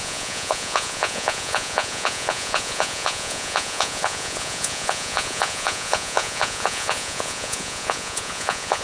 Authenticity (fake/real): fake